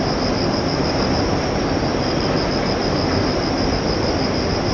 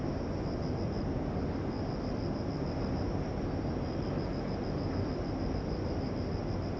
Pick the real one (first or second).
second